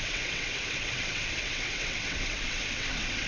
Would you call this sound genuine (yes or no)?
no